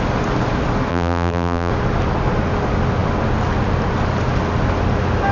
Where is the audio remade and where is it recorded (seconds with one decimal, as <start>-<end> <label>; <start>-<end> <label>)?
0.0-0.9 recorded; 0.9-1.7 remade; 1.7-5.3 recorded